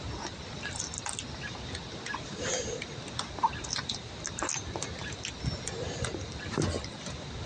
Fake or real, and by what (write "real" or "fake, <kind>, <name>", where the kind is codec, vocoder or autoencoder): real